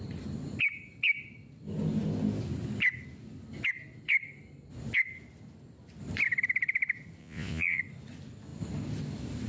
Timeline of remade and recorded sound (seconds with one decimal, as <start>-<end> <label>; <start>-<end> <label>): 0.0-7.2 recorded; 7.2-7.8 remade; 7.8-9.5 recorded